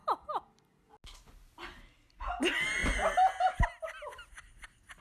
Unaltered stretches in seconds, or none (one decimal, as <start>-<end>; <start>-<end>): 0.0-5.0